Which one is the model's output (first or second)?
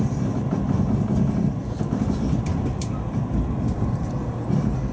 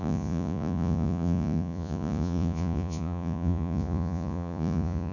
second